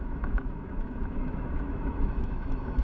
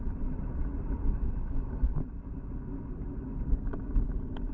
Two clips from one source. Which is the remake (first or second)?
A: first